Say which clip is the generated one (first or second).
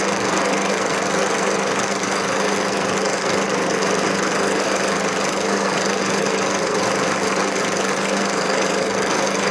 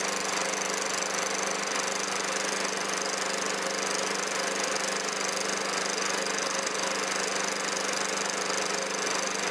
first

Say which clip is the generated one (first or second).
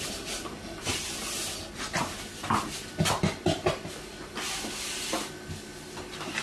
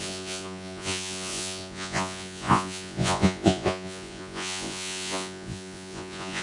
second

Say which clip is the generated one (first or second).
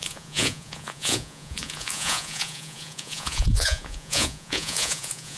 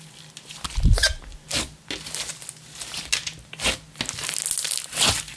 first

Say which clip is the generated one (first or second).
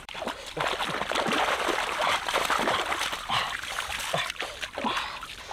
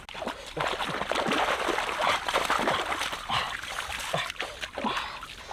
first